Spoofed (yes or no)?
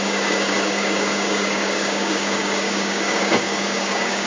yes